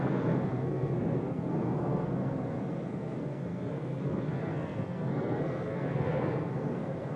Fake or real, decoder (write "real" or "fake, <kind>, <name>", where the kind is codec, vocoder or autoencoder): fake, codec, SNAC